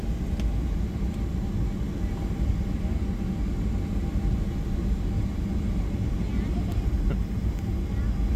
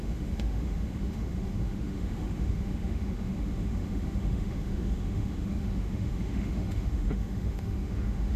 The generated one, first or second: second